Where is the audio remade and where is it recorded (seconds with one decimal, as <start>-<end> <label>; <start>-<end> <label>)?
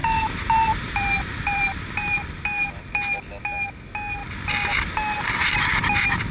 0.0-2.4 remade; 2.4-6.3 recorded